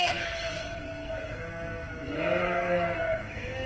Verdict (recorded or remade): remade